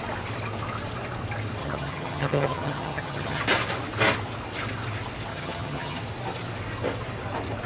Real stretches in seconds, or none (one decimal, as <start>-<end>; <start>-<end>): 0.0-1.6; 3.4-5.3; 6.0-7.7